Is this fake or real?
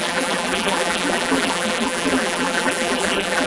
fake